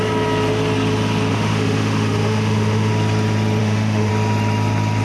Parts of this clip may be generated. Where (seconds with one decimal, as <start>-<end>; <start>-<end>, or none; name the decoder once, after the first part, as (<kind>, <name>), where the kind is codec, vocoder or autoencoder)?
1.3-2.9 (autoencoder, DAC-VAE); 3.6-4.1